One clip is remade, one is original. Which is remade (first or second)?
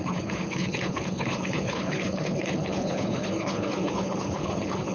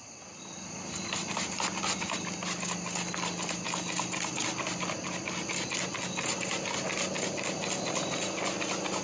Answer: first